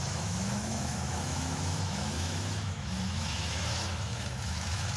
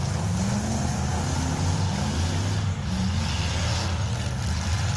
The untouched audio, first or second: second